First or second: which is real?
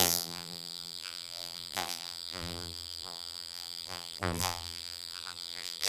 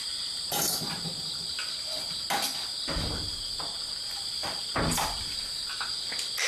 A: second